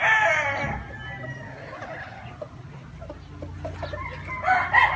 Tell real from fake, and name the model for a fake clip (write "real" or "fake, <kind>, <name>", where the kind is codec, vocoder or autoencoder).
real